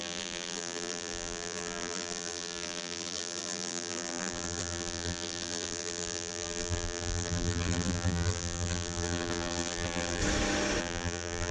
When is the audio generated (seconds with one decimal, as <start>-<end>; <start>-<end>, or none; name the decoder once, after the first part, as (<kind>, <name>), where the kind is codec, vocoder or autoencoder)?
0.0-10.2 (vocoder, BigVGAN v2); 10.8-11.5